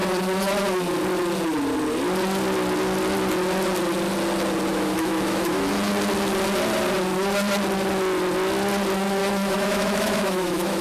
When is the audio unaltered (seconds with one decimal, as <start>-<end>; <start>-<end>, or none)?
0.0-4.7; 5.9-9.2